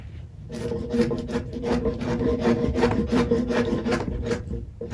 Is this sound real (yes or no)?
no